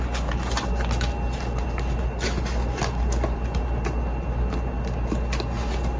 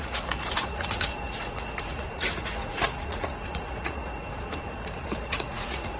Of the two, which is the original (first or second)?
first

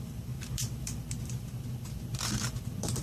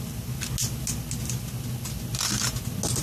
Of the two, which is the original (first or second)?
second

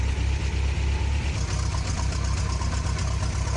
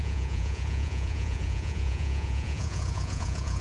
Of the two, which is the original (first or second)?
first